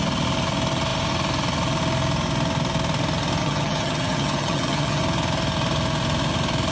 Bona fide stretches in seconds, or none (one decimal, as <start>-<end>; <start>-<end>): 0.0-3.4; 5.0-6.7